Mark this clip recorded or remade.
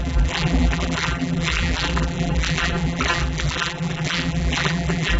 remade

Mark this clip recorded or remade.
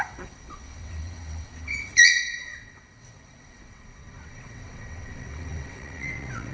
remade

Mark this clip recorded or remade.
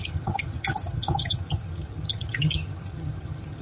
remade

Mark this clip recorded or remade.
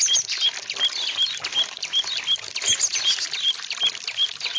recorded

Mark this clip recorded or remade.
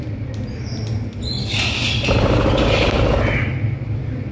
recorded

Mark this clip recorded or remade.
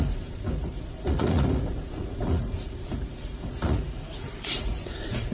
remade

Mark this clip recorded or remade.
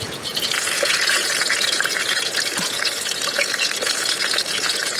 remade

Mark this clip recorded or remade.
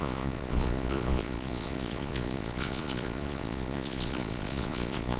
remade